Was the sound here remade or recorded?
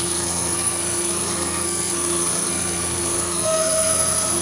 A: remade